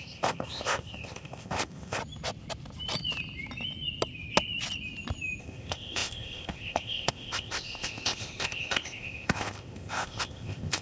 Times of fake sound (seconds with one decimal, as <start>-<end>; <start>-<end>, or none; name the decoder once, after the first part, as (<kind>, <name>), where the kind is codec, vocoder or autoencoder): 0.0-2.0 (codec, ZipCodec); 5.4-10.8